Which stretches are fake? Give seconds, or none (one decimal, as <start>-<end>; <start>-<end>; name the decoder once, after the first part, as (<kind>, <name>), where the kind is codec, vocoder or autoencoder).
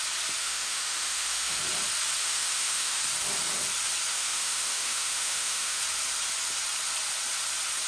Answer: 0.4-1.6 (autoencoder, DAC-VAE); 2.2-3.0; 4.1-5.8